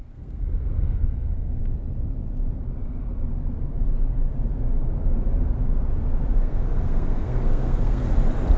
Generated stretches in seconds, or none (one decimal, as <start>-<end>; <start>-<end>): 0.0-1.6; 6.4-8.0